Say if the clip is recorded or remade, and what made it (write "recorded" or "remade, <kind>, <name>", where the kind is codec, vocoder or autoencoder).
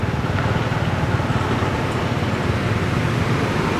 recorded